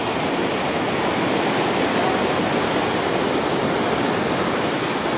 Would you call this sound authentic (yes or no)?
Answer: yes